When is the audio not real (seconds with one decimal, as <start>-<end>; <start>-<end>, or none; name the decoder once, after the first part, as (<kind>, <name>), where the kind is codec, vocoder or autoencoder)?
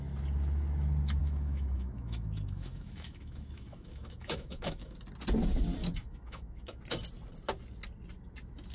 1.2-5.0 (autoencoder, DAC-VAE); 6.0-6.8